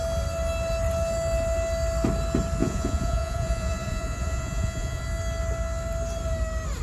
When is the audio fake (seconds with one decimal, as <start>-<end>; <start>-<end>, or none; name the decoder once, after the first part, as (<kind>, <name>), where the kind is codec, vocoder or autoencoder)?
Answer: 2.6-5.0 (vocoder, Vocos)